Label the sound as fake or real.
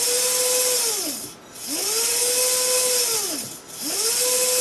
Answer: real